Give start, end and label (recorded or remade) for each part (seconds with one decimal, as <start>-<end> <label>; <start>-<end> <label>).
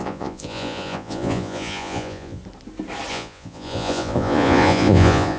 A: 0.0-2.4 remade; 2.4-3.1 recorded; 3.1-5.4 remade